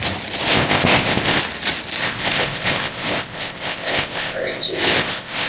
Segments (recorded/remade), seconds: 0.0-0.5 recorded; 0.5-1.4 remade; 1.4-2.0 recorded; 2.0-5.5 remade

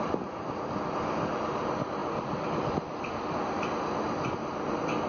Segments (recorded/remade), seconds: 0.0-5.1 recorded

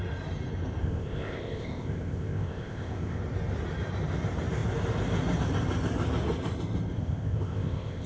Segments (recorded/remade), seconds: 0.0-0.8 recorded; 0.8-3.2 remade; 3.2-7.0 recorded; 7.0-8.1 remade